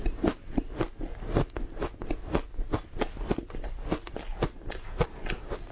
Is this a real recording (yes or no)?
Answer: yes